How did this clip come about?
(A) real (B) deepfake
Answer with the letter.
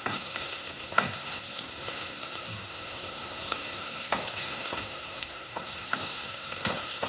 B